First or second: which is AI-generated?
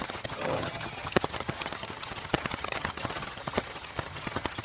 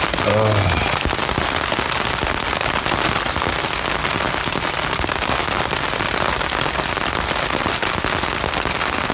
first